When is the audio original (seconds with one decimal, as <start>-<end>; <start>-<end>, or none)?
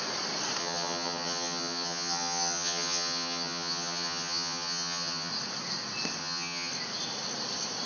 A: 0.0-0.6; 5.3-6.2; 6.7-7.9